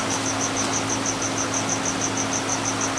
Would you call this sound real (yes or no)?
yes